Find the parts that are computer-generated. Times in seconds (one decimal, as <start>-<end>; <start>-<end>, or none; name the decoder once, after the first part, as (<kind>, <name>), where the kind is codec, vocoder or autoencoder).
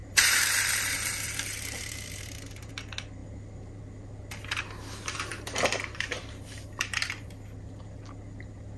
0.0-2.7 (vocoder, BigVGAN v2); 5.3-7.1